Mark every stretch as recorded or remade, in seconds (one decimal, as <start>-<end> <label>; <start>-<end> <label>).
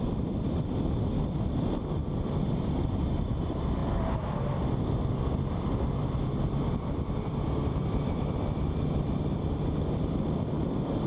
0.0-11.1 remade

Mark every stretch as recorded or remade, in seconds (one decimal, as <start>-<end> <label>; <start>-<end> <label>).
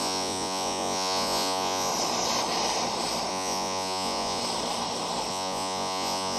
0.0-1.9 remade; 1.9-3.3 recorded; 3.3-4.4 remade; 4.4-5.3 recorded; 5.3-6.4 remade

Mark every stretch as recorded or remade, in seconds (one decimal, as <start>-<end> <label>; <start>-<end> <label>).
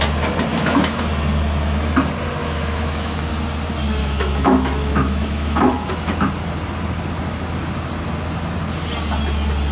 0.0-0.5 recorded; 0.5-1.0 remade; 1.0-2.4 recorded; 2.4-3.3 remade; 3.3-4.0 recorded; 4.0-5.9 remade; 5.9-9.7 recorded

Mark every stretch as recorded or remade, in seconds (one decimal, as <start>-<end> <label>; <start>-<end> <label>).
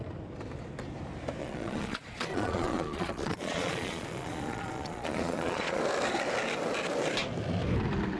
0.0-1.4 recorded; 1.4-5.8 remade; 5.8-8.2 recorded